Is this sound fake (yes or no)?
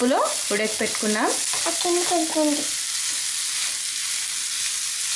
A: no